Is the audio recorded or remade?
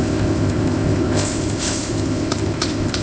remade